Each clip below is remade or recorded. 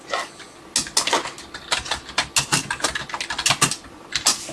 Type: recorded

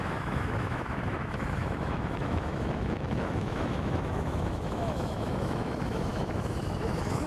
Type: remade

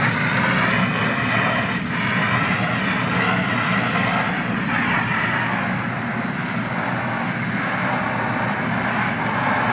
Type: recorded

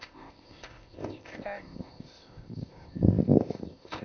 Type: remade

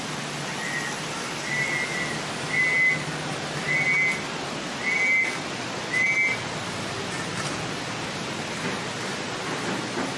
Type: recorded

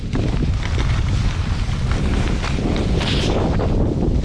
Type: remade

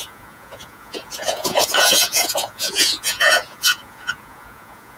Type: remade